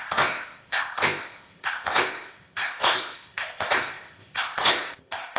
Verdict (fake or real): fake